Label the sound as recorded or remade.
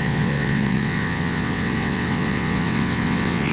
remade